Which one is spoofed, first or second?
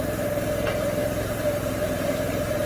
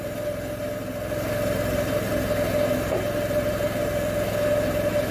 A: first